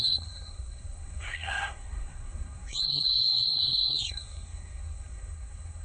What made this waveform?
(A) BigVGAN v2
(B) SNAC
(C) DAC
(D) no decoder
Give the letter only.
B